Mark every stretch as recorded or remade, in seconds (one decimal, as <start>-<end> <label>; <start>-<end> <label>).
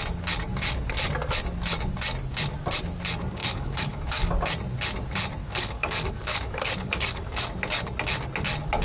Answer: 0.0-3.4 recorded; 3.4-4.3 remade; 4.3-5.4 recorded; 5.4-7.5 remade; 7.5-8.8 recorded